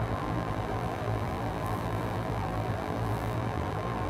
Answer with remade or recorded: remade